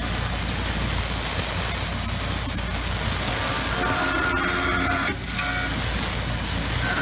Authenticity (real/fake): real